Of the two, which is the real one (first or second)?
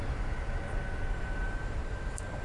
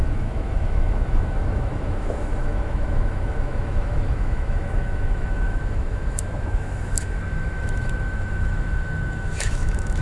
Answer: first